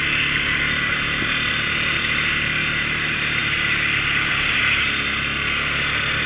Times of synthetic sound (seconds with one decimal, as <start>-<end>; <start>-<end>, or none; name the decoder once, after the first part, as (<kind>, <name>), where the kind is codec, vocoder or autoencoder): none